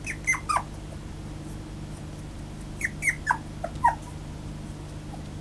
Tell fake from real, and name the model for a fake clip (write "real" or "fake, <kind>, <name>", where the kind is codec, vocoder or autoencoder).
real